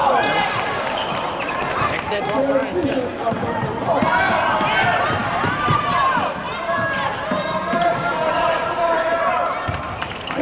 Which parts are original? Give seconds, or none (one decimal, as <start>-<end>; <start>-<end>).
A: 0.0-0.6; 2.6-3.2